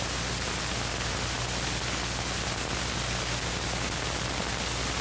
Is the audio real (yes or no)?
yes